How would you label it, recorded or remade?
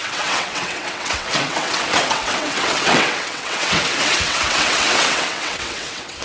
remade